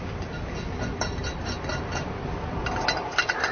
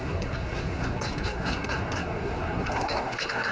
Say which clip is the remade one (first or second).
second